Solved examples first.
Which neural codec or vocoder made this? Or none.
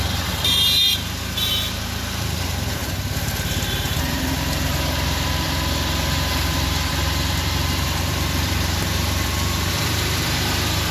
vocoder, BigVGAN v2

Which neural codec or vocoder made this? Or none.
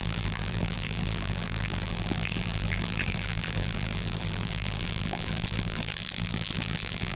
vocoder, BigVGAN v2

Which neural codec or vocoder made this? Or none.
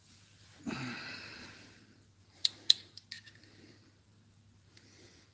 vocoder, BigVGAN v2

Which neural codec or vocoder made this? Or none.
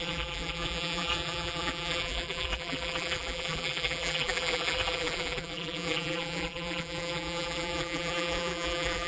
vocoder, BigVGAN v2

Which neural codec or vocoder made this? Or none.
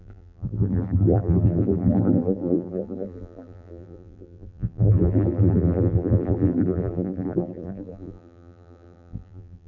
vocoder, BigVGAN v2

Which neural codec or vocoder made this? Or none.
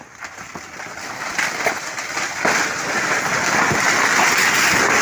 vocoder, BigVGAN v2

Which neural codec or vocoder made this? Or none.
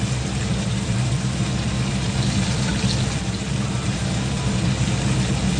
none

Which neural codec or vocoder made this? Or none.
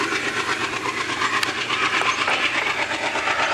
none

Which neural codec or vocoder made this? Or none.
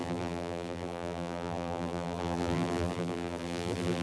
vocoder, BigVGAN v2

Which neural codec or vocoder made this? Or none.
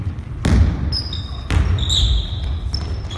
none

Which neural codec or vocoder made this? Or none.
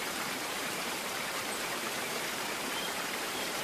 vocoder, BigVGAN v2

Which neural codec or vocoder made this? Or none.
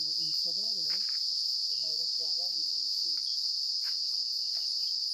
vocoder, BigVGAN v2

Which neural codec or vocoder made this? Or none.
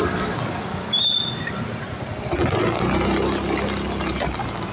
none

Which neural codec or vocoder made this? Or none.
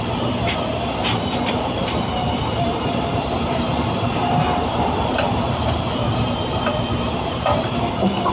vocoder, BigVGAN v2